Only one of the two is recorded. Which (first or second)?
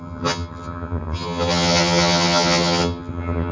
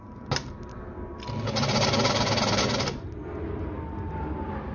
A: second